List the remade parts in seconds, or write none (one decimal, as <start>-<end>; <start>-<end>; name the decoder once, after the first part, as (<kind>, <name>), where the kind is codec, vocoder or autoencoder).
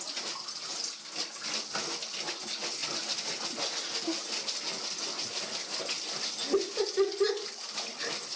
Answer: none